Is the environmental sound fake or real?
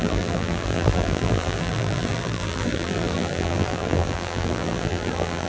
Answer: fake